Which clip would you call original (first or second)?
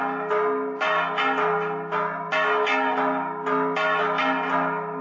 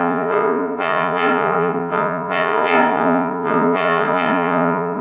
first